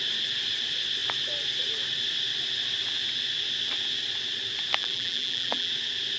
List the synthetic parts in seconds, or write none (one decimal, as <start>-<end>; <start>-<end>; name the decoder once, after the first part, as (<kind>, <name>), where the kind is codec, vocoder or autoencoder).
4.8-5.7 (vocoder, BigVGAN v2)